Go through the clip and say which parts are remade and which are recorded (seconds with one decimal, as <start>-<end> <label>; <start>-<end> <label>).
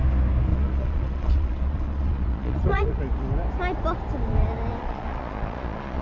0.0-0.5 recorded; 0.5-3.0 remade; 3.0-4.8 recorded; 4.8-6.0 remade